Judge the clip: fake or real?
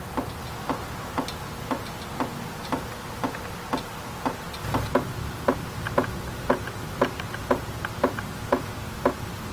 real